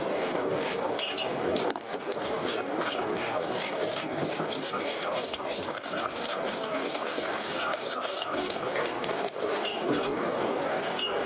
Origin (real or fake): fake